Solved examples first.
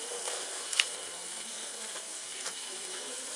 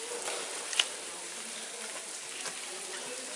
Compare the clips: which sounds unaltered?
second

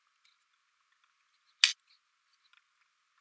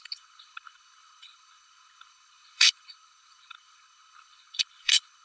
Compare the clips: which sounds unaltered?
first